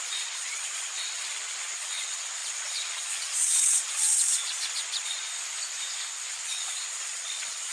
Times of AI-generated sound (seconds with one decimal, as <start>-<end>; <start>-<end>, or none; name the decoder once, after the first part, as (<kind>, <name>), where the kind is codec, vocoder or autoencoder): 0.0-5.3 (vocoder, Vocos); 6.3-7.7